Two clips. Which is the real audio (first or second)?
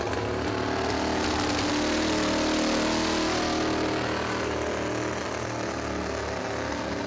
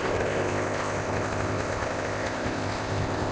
first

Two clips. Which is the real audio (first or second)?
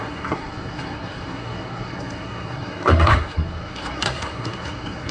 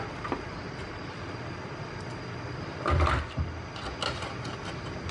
second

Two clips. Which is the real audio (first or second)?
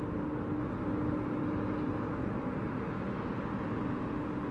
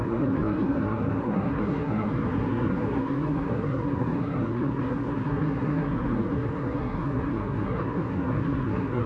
first